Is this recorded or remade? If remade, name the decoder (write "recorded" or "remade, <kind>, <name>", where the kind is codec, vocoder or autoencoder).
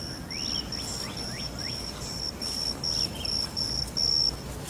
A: recorded